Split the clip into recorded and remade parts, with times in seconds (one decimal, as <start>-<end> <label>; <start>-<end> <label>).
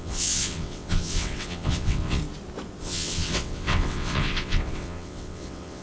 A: 0.0-2.2 remade; 2.2-2.8 recorded; 2.8-5.8 remade